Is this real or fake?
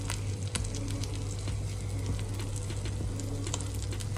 real